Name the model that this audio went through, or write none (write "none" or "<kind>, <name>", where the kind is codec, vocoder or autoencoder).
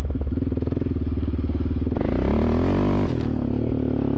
none